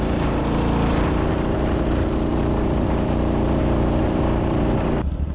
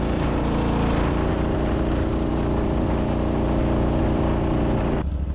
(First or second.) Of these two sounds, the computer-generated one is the first